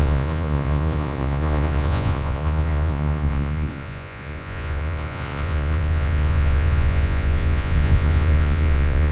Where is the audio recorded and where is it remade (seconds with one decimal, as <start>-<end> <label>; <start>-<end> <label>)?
0.0-9.1 remade